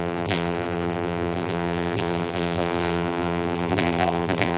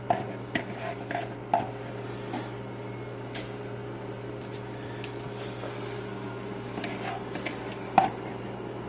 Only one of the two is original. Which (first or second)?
second